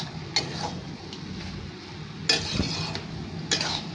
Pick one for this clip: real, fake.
real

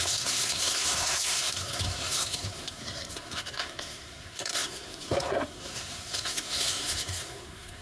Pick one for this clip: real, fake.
fake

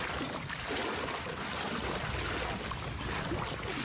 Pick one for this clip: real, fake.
real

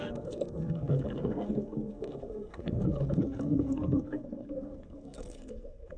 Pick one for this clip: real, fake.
fake